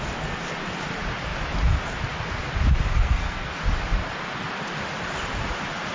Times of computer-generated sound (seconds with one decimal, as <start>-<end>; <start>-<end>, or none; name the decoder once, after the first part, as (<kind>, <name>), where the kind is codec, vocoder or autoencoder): 2.9-3.6 (codec, SNAC)